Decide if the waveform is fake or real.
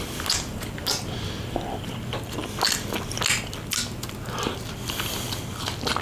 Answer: real